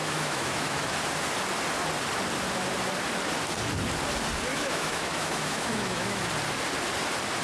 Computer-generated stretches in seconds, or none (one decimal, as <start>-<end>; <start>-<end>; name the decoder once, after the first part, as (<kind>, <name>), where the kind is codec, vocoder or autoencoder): 0.0-0.9 (autoencoder, DAC-VAE); 4.5-6.3